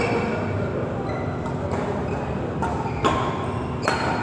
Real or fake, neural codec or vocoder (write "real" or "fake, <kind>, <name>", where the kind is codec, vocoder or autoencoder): real